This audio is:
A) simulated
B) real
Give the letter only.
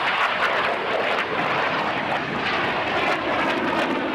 B